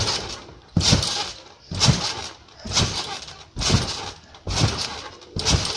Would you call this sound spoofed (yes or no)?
no